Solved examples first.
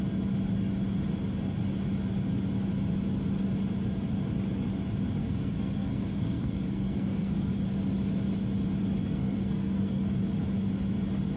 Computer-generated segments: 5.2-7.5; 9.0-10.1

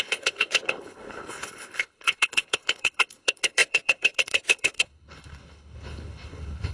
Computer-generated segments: 0.0-6.7

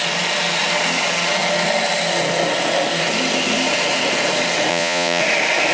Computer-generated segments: 4.7-5.2

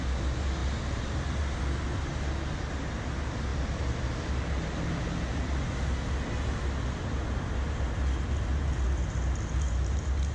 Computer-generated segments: none

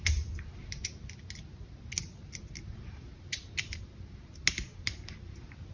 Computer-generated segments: none

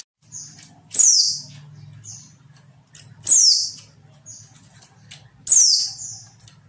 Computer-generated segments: none

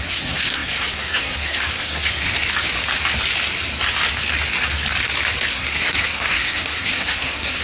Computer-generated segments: 0.0-2.3; 5.5-7.6